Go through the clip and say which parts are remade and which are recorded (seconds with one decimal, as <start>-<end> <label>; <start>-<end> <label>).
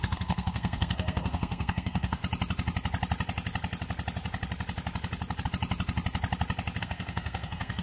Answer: 0.0-2.2 remade; 2.2-6.8 recorded; 6.8-7.8 remade